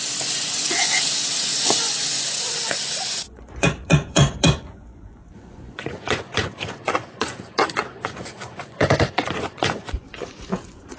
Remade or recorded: remade